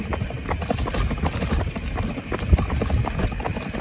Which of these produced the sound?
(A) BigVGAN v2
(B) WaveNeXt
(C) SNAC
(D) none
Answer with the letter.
A